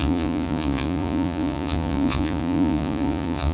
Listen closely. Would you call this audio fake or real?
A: fake